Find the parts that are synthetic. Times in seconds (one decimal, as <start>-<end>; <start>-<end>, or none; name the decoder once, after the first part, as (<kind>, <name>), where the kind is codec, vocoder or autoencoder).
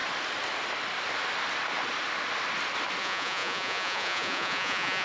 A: 3.0-5.0 (vocoder, Vocos)